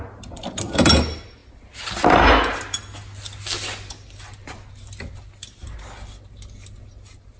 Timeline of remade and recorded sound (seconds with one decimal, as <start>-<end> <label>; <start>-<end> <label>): 0.0-7.4 recorded